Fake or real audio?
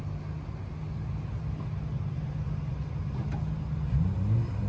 real